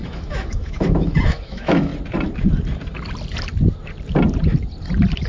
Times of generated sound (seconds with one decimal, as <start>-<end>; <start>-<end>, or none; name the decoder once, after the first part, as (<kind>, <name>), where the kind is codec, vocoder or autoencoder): 0.0-1.9 (autoencoder, DAC-VAE)